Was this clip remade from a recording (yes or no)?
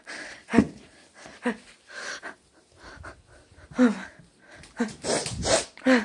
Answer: no